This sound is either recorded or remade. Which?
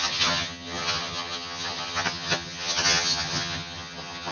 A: remade